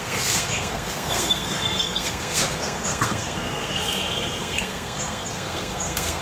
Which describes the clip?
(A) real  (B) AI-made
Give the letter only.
B